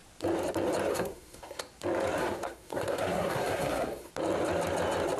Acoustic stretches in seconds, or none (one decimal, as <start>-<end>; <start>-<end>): 0.0-0.9; 1.6-2.2; 4.1-5.2